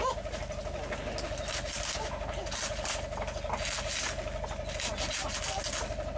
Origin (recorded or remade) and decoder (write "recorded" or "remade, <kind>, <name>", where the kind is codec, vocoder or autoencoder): recorded